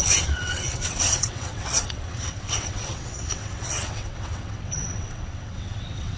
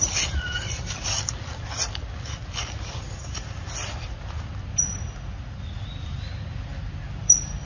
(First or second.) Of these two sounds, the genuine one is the second